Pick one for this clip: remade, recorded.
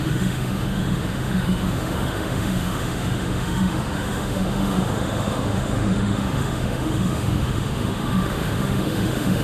remade